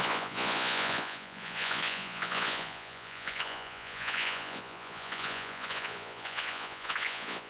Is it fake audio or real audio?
fake